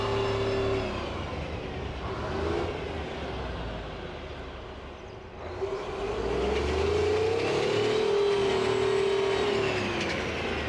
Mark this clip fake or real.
real